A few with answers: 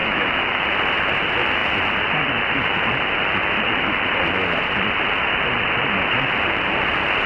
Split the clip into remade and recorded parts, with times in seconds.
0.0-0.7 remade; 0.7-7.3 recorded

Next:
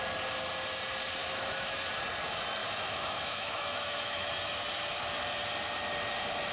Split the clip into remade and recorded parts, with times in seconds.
0.0-1.2 recorded; 1.2-1.8 remade; 1.8-2.6 recorded; 2.6-4.3 remade; 4.3-6.5 recorded